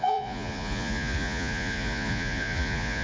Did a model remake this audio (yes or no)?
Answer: yes